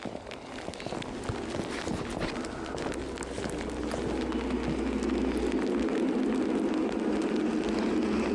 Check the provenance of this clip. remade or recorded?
recorded